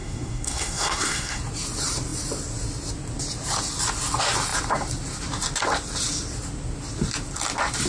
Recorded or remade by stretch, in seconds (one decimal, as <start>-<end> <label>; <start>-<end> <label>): 0.0-1.4 remade; 1.4-7.9 recorded